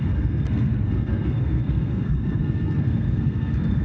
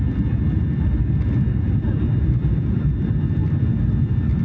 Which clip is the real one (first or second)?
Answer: second